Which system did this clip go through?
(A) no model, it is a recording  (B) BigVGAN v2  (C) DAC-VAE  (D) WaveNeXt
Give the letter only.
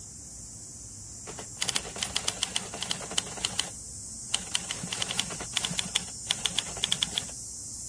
A